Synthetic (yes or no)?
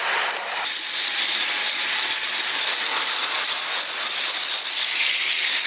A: no